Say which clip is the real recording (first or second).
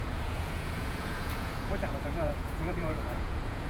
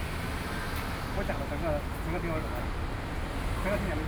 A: second